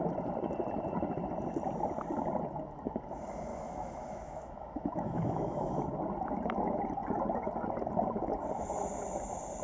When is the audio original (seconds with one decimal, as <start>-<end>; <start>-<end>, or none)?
0.0-3.5; 5.7-9.6